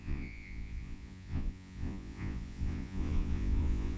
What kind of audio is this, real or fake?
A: fake